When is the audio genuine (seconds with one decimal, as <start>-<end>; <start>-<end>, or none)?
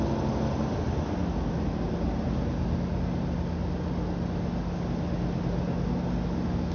0.0-6.7